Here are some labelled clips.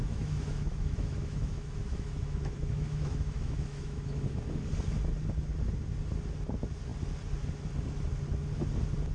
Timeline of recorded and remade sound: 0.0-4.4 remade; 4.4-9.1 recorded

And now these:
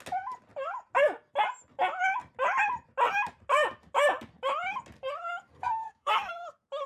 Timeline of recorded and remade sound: 0.0-5.5 recorded; 5.5-6.3 remade; 6.3-6.9 recorded

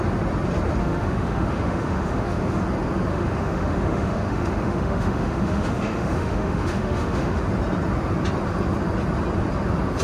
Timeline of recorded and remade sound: 0.0-0.8 recorded; 0.8-2.6 remade; 2.6-3.1 recorded; 3.1-7.4 remade; 7.4-10.0 recorded

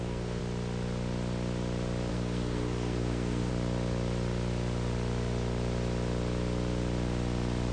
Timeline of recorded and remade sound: 0.0-0.4 remade; 0.4-2.1 recorded; 2.1-3.5 remade; 3.5-7.7 recorded

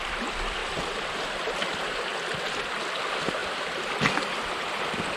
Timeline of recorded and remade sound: 0.0-0.6 recorded; 0.6-1.3 remade; 1.3-3.4 recorded; 3.4-3.9 remade; 3.9-5.2 recorded

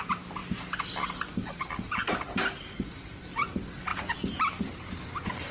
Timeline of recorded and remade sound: 0.0-3.9 recorded; 3.9-4.4 remade; 4.4-5.5 recorded

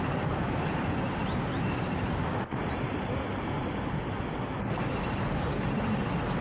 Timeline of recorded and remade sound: 0.0-6.4 recorded